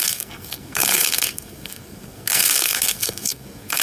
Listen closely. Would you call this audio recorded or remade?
remade